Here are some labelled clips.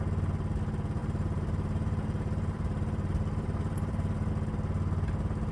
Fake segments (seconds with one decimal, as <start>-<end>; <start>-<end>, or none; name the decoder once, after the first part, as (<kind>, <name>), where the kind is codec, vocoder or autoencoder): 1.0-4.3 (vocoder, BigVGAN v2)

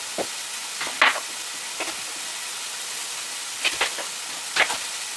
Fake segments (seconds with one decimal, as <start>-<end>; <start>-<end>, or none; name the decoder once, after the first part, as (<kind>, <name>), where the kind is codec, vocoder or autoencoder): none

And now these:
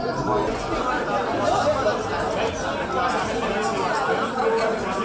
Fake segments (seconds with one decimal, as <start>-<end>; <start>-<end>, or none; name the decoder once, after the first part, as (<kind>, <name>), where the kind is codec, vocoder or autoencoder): 0.5-1.0 (vocoder, Vocos)